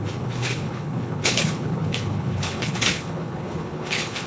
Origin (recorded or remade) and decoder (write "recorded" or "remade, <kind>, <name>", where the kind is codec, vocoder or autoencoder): remade, codec, HILCodec